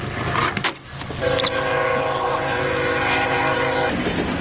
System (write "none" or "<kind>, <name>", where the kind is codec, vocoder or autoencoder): none